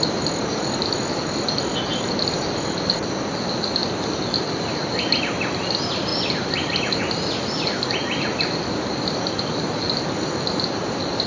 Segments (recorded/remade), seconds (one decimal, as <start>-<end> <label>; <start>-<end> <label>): 0.0-11.3 recorded